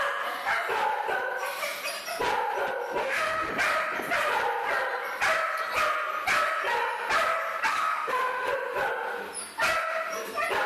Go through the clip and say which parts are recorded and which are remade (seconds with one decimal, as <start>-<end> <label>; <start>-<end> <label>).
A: 0.0-3.0 recorded; 3.0-3.5 remade; 3.5-7.7 recorded; 7.7-8.5 remade; 8.5-10.7 recorded